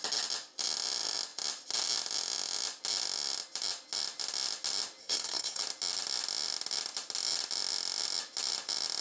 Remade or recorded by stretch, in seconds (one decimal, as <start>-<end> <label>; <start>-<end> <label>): 0.0-5.0 recorded; 5.0-5.6 remade; 5.6-9.0 recorded